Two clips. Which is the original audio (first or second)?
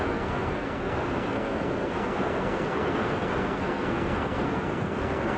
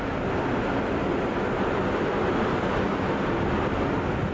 second